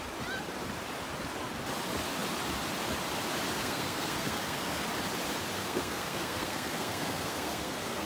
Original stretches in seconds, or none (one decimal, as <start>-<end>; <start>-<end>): 0.0-3.6; 4.9-5.6